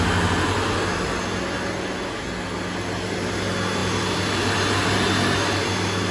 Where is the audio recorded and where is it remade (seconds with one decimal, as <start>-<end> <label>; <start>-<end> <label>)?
0.0-6.1 recorded